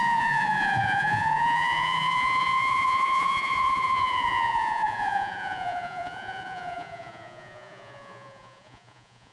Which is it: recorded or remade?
remade